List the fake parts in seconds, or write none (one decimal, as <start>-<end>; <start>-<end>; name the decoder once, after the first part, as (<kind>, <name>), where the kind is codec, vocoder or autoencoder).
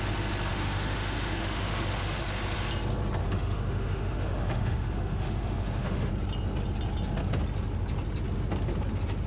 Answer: 0.5-2.2 (autoencoder, DAC-VAE); 3.2-6.1